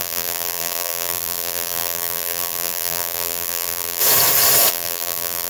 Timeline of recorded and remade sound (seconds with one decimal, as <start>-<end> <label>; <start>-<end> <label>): 0.0-4.0 remade; 4.0-4.7 recorded; 4.7-5.5 remade